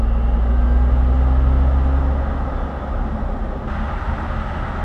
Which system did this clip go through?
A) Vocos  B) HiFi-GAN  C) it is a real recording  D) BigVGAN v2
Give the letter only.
C